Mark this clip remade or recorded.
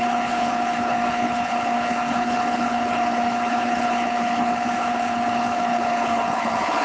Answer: remade